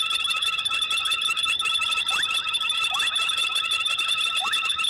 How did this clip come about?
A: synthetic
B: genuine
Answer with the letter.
A